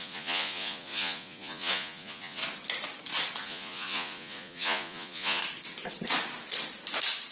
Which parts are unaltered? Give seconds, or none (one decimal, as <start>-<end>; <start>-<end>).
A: 2.4-3.4; 5.4-7.3